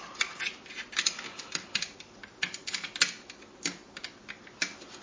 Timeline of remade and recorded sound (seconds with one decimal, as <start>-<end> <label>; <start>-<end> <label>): 0.0-2.2 remade; 2.2-4.1 recorded; 4.1-5.0 remade